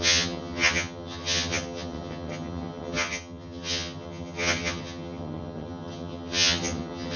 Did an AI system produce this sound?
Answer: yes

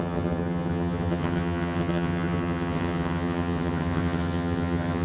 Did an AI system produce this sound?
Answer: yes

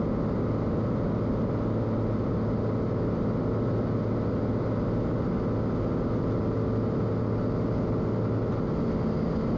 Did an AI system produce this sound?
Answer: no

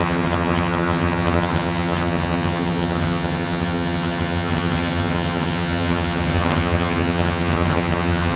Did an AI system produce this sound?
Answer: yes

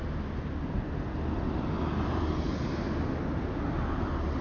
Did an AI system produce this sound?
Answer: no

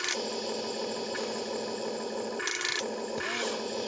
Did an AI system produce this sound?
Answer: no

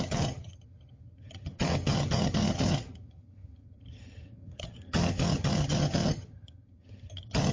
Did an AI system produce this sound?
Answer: yes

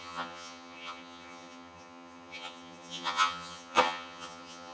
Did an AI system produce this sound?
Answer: yes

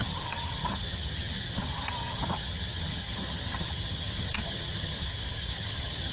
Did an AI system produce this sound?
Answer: yes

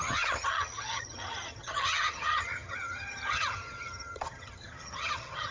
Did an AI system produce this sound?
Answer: yes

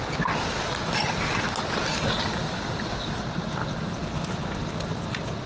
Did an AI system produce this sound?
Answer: no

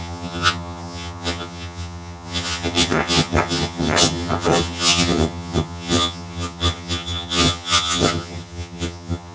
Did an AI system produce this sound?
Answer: yes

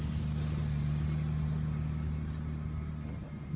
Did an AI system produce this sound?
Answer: no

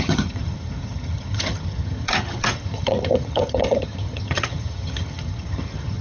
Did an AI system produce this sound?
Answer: yes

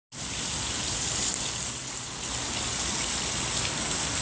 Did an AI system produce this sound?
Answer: no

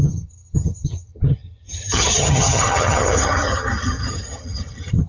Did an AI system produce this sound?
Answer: yes